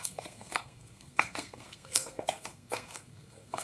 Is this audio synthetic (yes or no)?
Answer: yes